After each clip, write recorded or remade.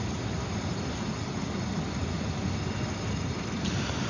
recorded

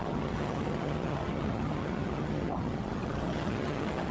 remade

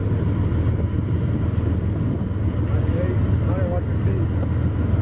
recorded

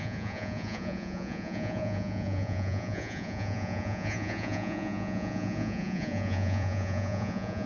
remade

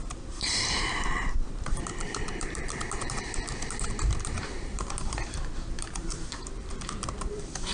remade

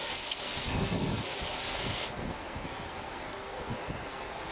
remade